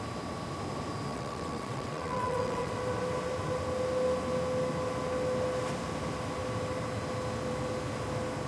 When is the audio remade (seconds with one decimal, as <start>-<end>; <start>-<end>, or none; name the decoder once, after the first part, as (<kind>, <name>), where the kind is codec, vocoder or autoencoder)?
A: 1.1-2.7 (vocoder, WaveNeXt)